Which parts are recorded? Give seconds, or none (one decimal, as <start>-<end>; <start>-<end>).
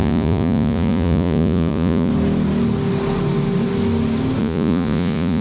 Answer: 2.1-4.4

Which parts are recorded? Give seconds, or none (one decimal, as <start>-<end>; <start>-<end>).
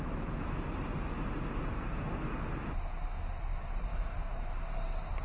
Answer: 0.0-1.7; 2.4-5.2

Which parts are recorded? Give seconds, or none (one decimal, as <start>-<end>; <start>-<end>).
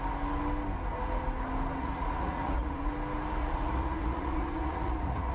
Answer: 0.0-1.8; 2.9-3.4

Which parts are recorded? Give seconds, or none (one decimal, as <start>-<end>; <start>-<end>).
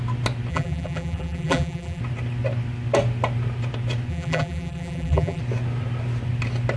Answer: 0.0-0.5; 2.0-4.1; 5.4-6.8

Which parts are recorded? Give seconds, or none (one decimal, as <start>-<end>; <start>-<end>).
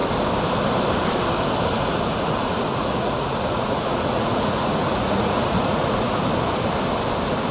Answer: 0.0-1.7; 6.2-7.5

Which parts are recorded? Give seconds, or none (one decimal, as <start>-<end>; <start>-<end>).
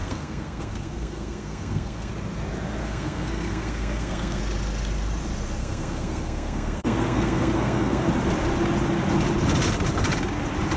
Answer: 2.1-2.8; 4.4-5.6; 8.1-10.8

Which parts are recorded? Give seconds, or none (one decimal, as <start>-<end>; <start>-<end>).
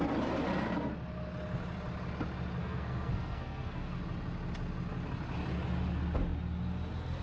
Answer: 0.0-2.6; 4.0-7.2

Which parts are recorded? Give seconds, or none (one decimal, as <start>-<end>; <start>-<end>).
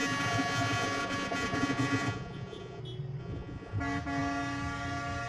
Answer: 2.8-3.2; 3.8-5.3